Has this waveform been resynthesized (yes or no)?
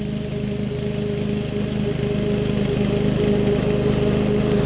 no